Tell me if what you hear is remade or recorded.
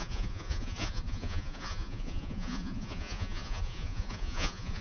remade